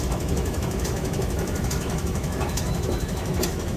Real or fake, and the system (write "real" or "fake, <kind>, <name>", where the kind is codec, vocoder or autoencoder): fake, autoencoder, DAC-VAE